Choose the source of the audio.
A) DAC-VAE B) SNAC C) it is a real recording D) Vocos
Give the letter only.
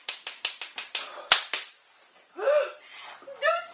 C